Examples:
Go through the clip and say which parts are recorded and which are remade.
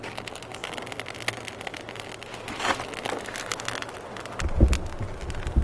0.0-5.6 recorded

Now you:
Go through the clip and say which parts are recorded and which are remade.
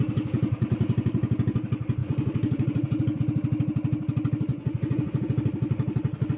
0.0-2.0 recorded; 2.0-3.2 remade; 3.2-4.5 recorded; 4.5-5.2 remade; 5.2-6.4 recorded